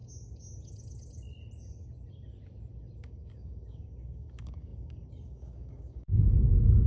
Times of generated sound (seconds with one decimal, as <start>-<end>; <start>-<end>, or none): 3.0-6.9